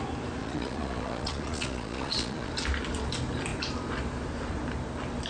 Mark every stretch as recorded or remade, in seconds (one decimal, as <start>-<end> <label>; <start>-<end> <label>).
0.0-0.4 recorded; 0.4-2.5 remade; 2.5-5.3 recorded